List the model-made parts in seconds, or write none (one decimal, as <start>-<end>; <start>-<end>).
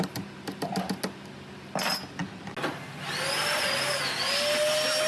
none